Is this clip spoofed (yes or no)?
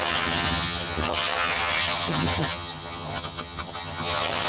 yes